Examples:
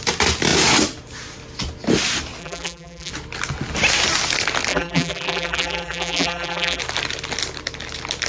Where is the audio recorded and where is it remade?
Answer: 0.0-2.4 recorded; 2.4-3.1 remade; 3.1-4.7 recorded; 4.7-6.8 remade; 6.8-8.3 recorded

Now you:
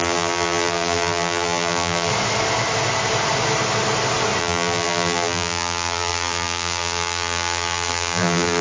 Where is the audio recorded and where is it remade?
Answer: 0.0-2.1 remade; 2.1-4.4 recorded; 4.4-8.6 remade

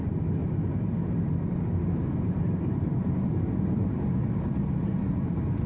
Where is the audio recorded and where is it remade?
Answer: 0.0-0.4 recorded; 0.4-3.3 remade; 3.3-4.8 recorded; 4.8-5.7 remade

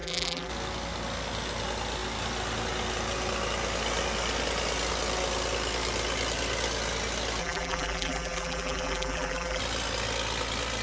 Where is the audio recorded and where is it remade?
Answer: 0.0-0.5 remade; 0.5-7.4 recorded; 7.4-9.6 remade; 9.6-10.8 recorded

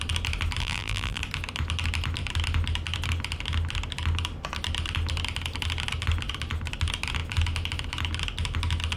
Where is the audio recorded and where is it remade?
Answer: 0.0-0.6 recorded; 0.6-1.2 remade; 1.2-9.0 recorded

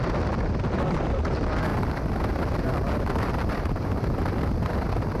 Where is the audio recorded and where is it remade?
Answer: 0.0-1.7 remade; 1.7-3.4 recorded; 3.4-4.2 remade; 4.2-4.7 recorded; 4.7-5.2 remade